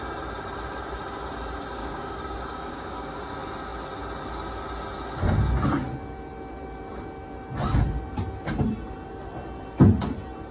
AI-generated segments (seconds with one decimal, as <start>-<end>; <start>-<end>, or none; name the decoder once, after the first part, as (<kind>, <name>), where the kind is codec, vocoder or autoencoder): 1.8-3.2 (codec, DAC)